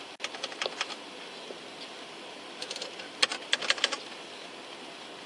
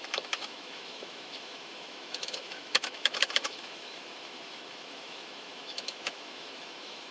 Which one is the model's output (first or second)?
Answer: second